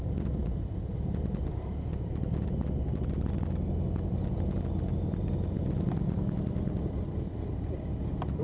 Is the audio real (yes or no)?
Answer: yes